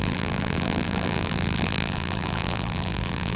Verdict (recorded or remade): remade